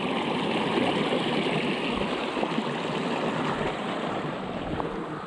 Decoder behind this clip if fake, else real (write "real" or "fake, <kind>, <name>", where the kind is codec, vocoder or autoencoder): real